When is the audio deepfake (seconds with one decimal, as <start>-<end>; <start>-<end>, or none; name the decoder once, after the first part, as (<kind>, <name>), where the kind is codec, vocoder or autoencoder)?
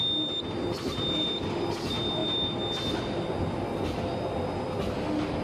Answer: none